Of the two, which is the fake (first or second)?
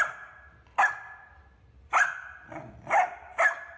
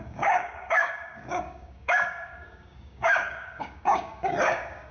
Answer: second